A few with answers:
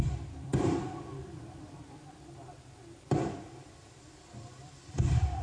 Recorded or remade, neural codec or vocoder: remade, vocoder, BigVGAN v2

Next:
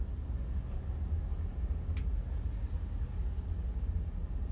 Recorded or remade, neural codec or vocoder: recorded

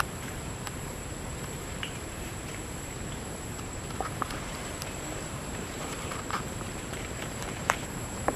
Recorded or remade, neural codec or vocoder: remade, vocoder, BigVGAN v2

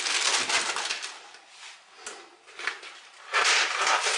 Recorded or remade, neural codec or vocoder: recorded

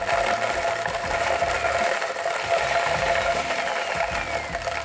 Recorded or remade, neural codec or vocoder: recorded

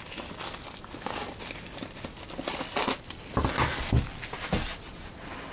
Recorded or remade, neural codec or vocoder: recorded